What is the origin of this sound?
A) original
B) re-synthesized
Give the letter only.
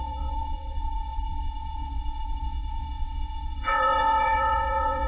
B